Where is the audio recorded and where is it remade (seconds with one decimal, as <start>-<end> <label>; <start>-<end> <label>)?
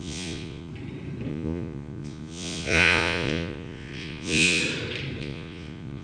0.0-0.7 remade; 0.7-1.3 recorded; 1.3-4.6 remade; 4.6-5.2 recorded; 5.2-6.0 remade